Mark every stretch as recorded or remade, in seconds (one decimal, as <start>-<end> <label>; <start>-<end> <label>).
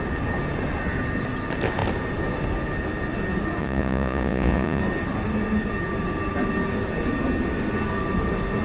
0.0-3.6 recorded; 3.6-4.8 remade; 4.8-8.6 recorded